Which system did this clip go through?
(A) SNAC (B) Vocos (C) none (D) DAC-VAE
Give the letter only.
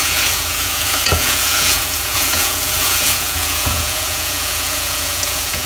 B